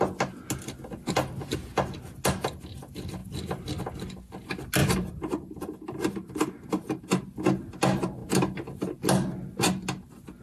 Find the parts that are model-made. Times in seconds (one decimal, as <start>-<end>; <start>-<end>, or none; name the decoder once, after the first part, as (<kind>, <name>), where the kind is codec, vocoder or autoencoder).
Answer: 4.8-7.1 (vocoder, BigVGAN v2)